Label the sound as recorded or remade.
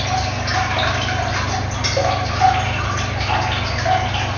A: recorded